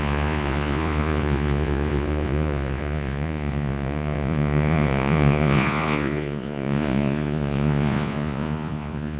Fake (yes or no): yes